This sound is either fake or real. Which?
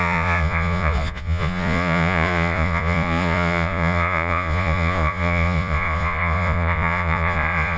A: fake